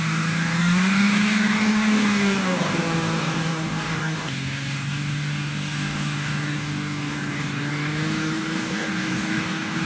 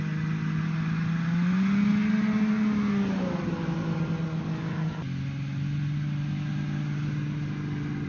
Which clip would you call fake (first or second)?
first